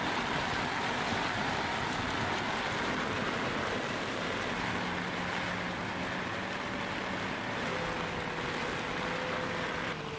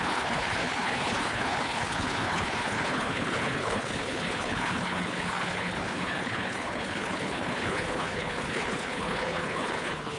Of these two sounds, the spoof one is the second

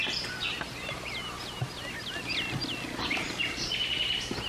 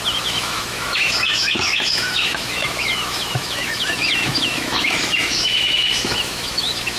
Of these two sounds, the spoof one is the second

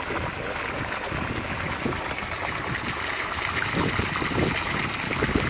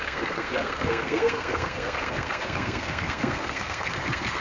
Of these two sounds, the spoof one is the second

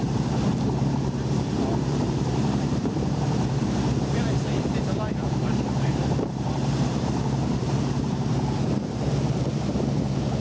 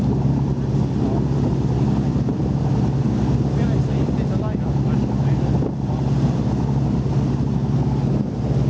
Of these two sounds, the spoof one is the first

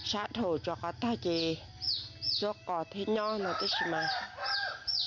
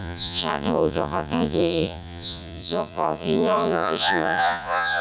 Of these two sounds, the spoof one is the second